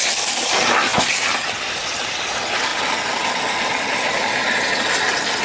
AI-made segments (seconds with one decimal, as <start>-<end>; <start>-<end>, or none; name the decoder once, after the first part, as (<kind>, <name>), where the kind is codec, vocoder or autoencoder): none